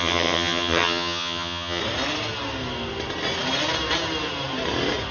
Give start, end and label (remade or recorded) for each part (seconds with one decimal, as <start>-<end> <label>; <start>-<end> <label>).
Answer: 0.0-1.8 remade; 1.8-5.1 recorded